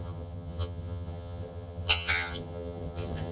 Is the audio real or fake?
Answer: fake